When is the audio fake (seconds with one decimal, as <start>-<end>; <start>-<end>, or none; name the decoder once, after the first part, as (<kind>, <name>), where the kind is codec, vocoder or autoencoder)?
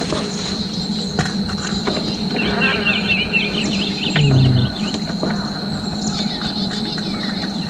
none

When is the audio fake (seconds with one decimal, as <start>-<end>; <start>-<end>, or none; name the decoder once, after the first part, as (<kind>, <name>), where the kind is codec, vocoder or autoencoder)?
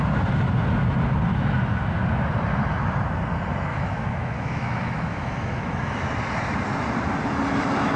3.7-6.0 (autoencoder, DAC-VAE)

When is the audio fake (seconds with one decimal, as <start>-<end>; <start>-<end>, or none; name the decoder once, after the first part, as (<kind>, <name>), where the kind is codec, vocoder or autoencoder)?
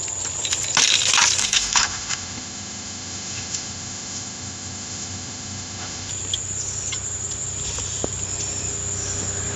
1.4-6.1 (autoencoder, DAC-VAE)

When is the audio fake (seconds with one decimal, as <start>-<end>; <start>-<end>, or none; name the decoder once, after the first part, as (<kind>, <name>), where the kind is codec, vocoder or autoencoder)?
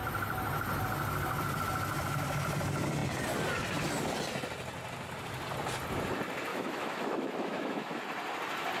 6.5-8.0 (autoencoder, DAC-VAE)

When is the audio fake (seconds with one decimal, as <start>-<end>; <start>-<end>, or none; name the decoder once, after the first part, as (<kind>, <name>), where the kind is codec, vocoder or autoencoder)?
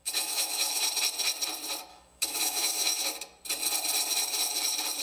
0.0-0.9 (autoencoder, DAC-VAE); 1.9-3.0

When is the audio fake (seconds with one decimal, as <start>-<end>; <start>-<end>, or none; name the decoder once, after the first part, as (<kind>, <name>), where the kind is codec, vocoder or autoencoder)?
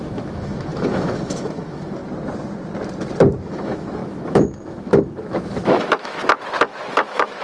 0.0-2.0 (autoencoder, DAC-VAE); 3.4-6.2; 6.9-7.4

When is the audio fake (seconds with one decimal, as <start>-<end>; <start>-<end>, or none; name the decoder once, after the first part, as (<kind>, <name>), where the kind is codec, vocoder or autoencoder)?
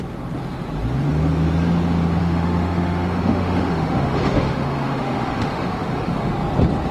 2.2-6.3 (autoencoder, DAC-VAE)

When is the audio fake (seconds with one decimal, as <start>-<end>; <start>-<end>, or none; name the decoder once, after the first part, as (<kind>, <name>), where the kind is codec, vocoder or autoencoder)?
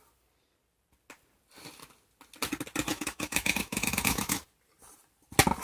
2.9-4.4 (autoencoder, DAC-VAE)